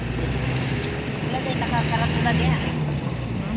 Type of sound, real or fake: real